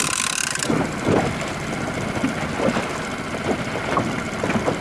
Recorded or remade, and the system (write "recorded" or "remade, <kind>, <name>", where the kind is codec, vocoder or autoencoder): recorded